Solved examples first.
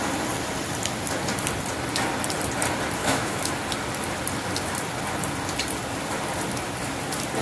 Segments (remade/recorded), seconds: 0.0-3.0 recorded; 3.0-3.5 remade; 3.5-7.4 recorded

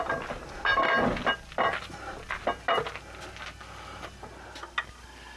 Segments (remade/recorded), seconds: 0.0-5.4 recorded

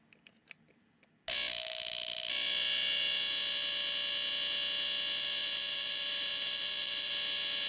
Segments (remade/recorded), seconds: 0.0-5.4 recorded; 5.4-7.1 remade; 7.1-7.7 recorded